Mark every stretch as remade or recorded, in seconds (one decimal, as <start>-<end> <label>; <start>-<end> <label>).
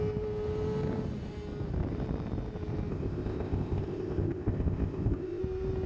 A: 0.0-2.9 recorded; 2.9-5.4 remade; 5.4-5.9 recorded